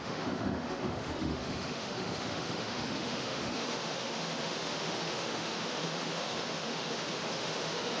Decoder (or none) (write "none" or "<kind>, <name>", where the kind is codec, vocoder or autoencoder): autoencoder, DAC-VAE